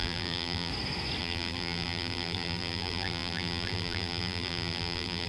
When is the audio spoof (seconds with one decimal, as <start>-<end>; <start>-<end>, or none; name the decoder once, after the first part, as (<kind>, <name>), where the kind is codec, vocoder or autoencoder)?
0.0-0.7 (vocoder, BigVGAN v2); 1.2-5.3